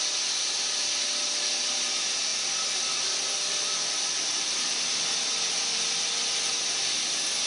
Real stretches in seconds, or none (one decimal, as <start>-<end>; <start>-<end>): 0.0-7.5